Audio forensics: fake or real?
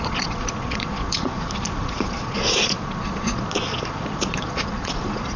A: fake